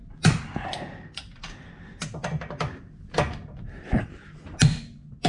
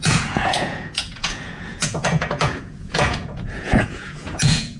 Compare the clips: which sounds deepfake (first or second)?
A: second